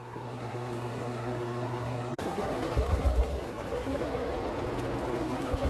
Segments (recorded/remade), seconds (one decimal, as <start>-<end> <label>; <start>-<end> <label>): 0.0-4.3 remade; 4.3-5.1 recorded; 5.1-5.7 remade